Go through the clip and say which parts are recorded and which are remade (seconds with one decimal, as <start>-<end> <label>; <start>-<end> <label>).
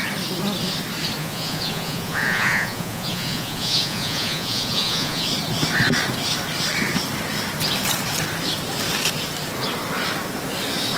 0.0-1.2 recorded; 1.2-5.3 remade; 5.3-11.0 recorded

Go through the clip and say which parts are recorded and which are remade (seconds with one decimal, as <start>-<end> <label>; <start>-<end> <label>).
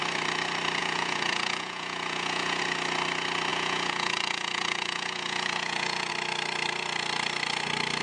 0.0-0.8 recorded; 0.8-2.6 remade; 2.6-3.5 recorded; 3.5-6.1 remade; 6.1-8.0 recorded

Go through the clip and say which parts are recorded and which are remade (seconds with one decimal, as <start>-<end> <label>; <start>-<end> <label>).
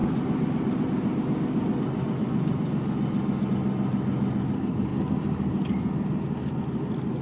0.0-7.2 recorded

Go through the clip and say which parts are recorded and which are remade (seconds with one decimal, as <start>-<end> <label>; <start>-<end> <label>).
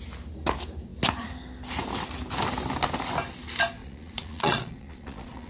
0.0-3.8 recorded; 3.8-5.5 remade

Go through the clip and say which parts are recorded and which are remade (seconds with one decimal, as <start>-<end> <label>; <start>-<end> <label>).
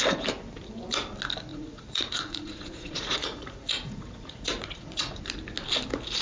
0.0-1.5 recorded; 1.5-5.2 remade; 5.2-6.2 recorded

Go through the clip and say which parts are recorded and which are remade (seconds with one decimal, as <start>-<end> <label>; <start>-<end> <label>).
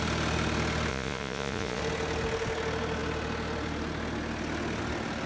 0.0-0.9 recorded; 0.9-1.8 remade; 1.8-5.3 recorded